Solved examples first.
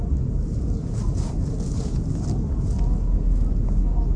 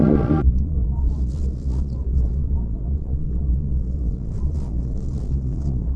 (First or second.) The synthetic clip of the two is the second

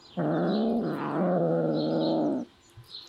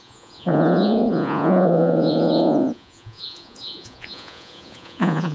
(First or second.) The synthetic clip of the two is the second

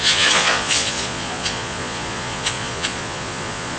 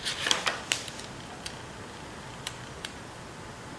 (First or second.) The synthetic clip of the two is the first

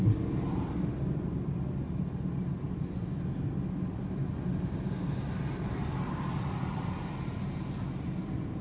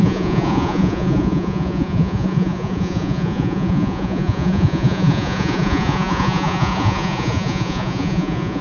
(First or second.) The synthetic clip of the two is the second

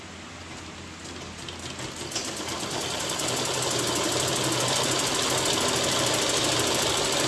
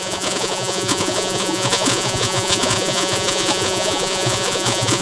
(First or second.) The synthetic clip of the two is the second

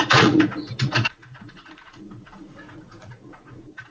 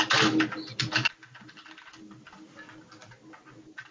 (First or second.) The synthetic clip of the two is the first